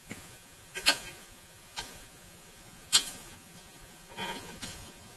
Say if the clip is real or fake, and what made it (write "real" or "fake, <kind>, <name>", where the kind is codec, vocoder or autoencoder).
fake, vocoder, Vocos